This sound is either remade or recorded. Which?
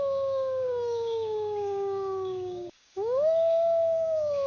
remade